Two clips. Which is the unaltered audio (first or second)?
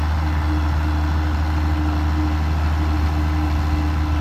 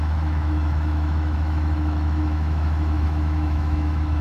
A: first